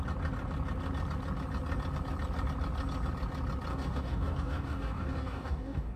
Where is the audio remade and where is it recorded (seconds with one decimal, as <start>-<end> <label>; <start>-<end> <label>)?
0.0-3.7 recorded; 3.7-6.0 remade